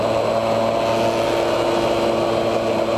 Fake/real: real